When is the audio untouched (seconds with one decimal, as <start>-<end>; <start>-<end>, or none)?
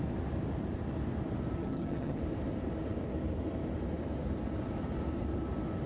0.0-1.6; 2.2-5.9